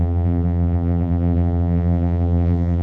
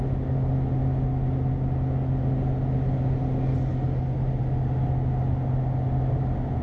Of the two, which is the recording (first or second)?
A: second